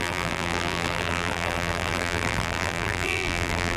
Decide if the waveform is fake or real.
fake